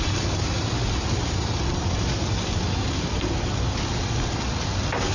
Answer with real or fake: real